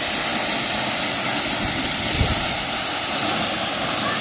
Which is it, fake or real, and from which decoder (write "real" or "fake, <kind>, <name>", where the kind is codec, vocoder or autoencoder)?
real